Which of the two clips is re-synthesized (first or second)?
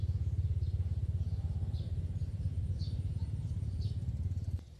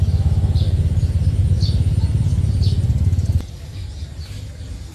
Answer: first